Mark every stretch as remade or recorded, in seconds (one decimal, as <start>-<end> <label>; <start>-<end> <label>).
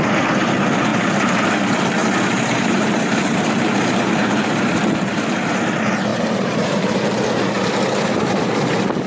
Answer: 0.0-0.9 recorded; 0.9-1.6 remade; 1.6-2.0 recorded; 2.0-4.9 remade; 4.9-6.1 recorded; 6.1-7.0 remade; 7.0-9.1 recorded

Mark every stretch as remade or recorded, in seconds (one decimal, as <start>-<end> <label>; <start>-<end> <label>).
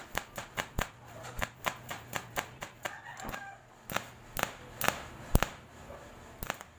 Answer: 0.0-6.8 recorded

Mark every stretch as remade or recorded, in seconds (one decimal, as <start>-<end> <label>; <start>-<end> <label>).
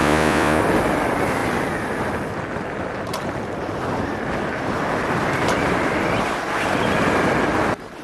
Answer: 0.0-0.6 remade; 0.6-8.0 recorded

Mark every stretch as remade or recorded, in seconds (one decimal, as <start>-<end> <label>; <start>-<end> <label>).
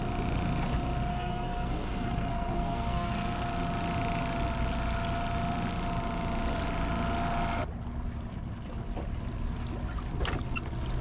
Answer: 0.0-1.1 recorded; 1.1-3.1 remade; 3.1-11.0 recorded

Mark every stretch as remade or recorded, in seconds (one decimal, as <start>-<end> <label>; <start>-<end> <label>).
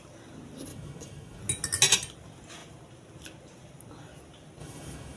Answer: 0.0-0.7 recorded; 0.7-1.4 remade; 1.4-4.6 recorded; 4.6-5.2 remade